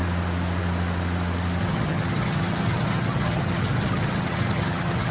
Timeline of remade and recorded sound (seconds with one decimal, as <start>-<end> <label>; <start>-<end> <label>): 0.0-1.6 recorded; 1.6-5.1 remade